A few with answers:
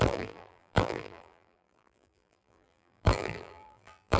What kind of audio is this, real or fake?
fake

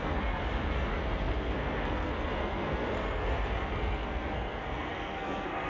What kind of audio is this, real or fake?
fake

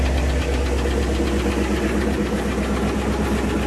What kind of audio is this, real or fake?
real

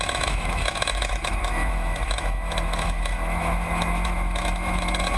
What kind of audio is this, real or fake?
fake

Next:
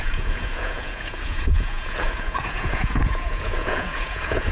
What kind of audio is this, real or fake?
fake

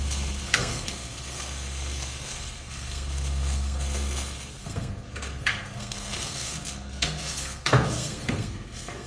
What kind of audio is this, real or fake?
fake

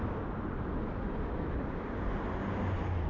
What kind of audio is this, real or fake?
real